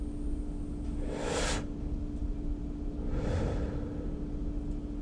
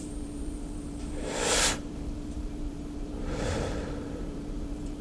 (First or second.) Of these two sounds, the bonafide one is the first